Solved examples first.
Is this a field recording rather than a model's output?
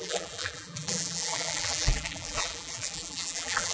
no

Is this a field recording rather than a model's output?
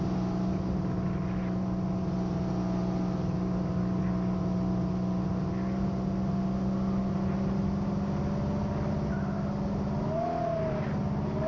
yes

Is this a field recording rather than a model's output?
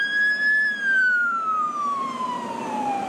no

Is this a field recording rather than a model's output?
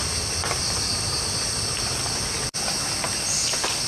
yes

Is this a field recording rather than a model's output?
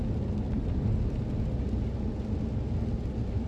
yes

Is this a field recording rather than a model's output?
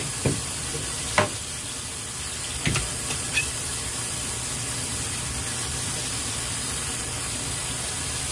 no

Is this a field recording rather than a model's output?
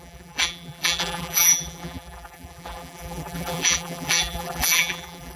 no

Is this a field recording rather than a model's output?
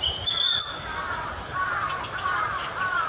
no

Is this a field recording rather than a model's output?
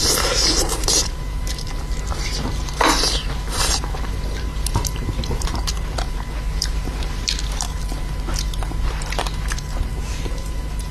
no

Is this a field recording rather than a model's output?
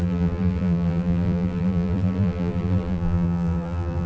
no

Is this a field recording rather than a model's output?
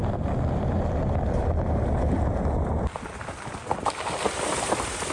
no